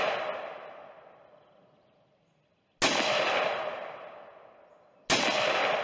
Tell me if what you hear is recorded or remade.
recorded